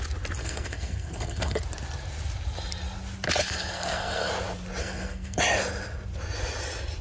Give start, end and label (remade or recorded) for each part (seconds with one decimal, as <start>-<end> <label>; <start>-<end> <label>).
0.0-0.4 recorded; 0.4-1.6 remade; 1.6-3.4 recorded; 3.4-4.3 remade; 4.3-4.8 recorded; 4.8-5.4 remade; 5.4-7.0 recorded